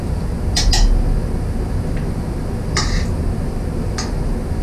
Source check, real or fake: real